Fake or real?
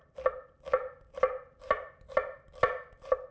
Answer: real